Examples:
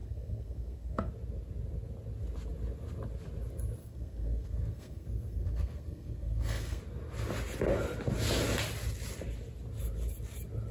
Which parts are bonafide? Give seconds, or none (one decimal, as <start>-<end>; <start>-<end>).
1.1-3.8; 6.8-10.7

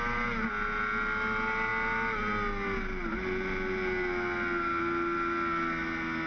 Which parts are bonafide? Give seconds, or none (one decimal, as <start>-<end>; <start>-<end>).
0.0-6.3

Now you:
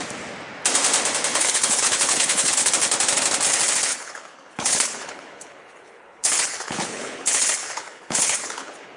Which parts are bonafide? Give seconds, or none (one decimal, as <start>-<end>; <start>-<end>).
0.0-1.3; 2.7-3.9